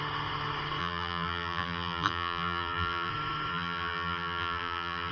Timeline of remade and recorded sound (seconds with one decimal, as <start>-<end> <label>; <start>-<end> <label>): 0.0-0.8 recorded; 0.8-3.1 remade; 3.1-3.5 recorded; 3.5-5.1 remade

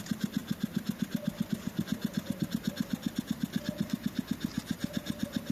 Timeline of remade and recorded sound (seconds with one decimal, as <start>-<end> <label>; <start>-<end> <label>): 0.0-0.4 recorded; 0.4-1.5 remade; 1.5-5.5 recorded

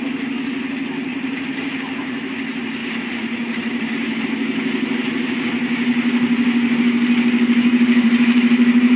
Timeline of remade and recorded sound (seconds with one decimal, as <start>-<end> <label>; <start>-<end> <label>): 0.0-1.1 recorded; 1.1-2.3 remade; 2.3-2.8 recorded; 2.8-4.2 remade; 4.2-7.7 recorded; 7.7-9.0 remade

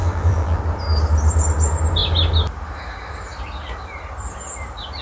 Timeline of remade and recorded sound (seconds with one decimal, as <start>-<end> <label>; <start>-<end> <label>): 0.0-0.6 remade; 0.6-5.0 recorded

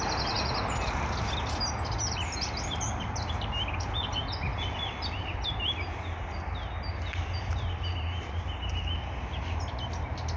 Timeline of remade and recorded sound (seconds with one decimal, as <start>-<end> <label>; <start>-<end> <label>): 0.0-10.4 recorded

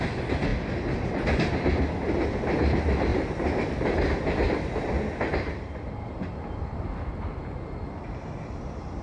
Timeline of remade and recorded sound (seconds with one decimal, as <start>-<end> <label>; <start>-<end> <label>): 0.0-3.1 recorded; 3.1-8.2 remade; 8.2-9.0 recorded

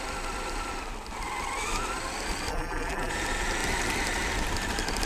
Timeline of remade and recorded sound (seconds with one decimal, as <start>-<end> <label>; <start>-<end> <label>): 0.0-2.5 recorded; 2.5-3.1 remade; 3.1-5.1 recorded